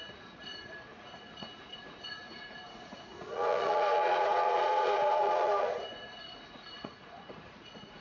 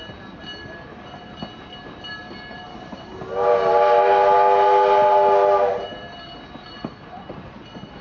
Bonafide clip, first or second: second